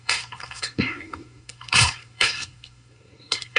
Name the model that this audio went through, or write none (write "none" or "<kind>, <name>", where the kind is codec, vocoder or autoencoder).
codec, SNAC